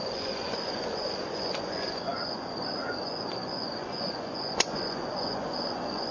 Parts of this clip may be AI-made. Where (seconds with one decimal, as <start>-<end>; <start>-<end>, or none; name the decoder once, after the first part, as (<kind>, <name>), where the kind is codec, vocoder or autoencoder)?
0.0-6.1 (vocoder, Vocos)